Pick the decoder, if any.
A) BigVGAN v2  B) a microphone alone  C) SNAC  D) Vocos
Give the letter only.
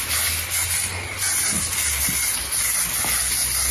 B